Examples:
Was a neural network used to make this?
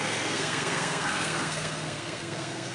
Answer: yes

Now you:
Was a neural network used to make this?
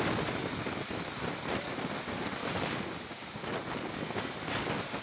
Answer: no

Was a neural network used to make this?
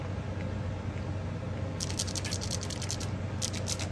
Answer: no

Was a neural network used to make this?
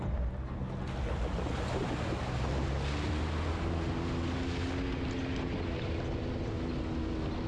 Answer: no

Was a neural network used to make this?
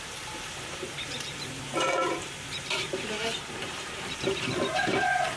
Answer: yes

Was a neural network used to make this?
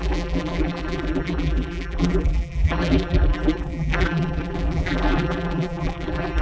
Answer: yes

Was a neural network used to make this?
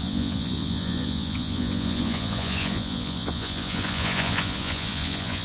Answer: yes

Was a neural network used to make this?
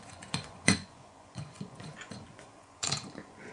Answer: yes